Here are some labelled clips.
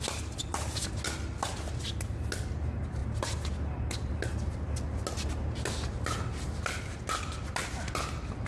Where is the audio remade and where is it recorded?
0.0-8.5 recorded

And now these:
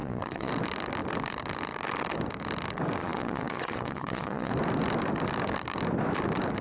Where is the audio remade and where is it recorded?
0.0-0.5 remade; 0.5-3.0 recorded; 3.0-4.5 remade; 4.5-6.6 recorded

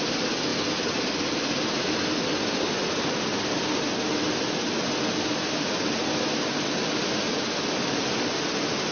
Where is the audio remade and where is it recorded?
0.0-8.9 recorded

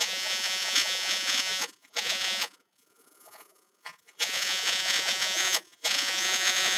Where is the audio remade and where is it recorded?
0.0-6.8 remade